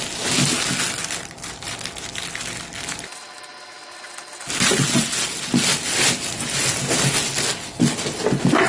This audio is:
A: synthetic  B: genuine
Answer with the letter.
B